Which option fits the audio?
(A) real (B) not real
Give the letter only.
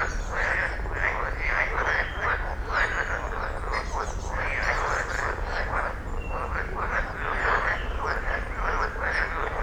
A